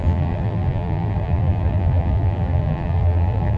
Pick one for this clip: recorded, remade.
remade